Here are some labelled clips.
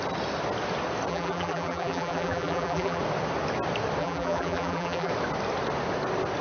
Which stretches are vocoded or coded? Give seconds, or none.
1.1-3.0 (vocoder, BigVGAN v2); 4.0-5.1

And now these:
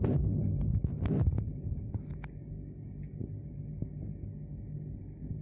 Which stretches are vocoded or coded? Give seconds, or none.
0.4-2.1 (vocoder, BigVGAN v2)

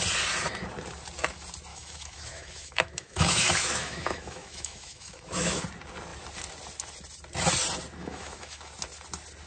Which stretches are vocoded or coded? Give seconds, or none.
1.7-5.6 (autoencoder, DAC-VAE); 8.0-8.7

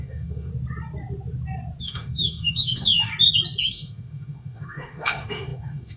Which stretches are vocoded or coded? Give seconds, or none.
0.0-0.5 (autoencoder, DAC-VAE); 1.8-3.1; 3.6-6.0

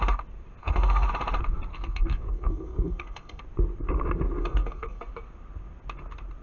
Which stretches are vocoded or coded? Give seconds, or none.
0.6-1.1 (codec, SNAC); 1.7-3.4; 4.4-5.1

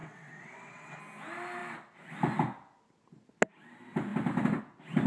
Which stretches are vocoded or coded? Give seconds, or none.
0.0-1.0 (vocoder, WaveNeXt)

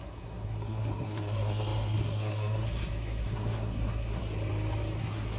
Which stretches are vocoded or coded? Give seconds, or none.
0.0-4.2 (codec, SNAC); 5.0-5.4

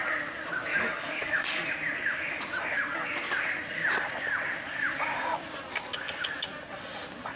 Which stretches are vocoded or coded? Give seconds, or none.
0.7-1.7 (codec, DAC)